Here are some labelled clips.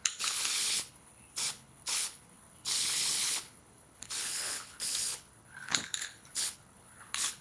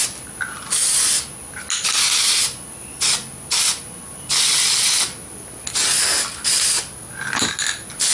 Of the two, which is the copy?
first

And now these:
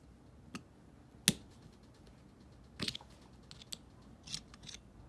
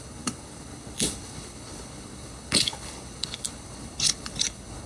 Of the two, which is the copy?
second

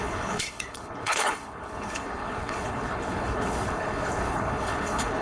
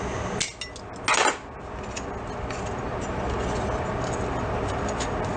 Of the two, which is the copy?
first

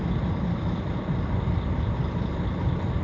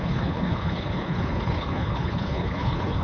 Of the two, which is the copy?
second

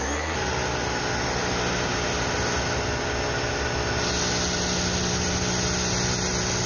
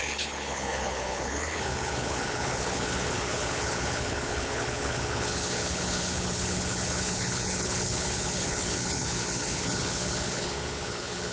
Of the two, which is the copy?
second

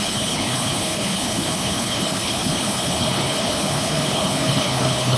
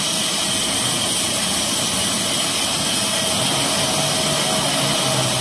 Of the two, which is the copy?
first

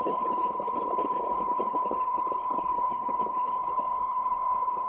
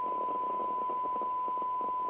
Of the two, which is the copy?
first